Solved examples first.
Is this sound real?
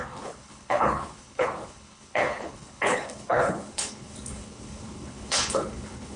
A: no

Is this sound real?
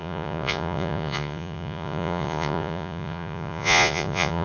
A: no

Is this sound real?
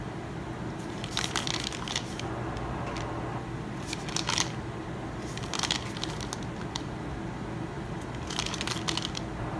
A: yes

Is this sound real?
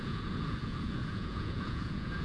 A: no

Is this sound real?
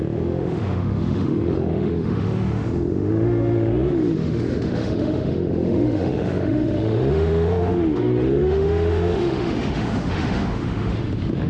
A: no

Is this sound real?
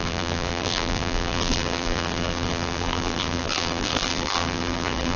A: no